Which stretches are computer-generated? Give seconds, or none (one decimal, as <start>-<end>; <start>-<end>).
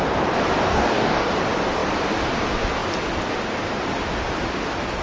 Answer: 0.7-1.3